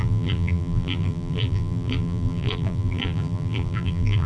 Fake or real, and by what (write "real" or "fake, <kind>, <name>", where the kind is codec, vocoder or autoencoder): fake, vocoder, BigVGAN v2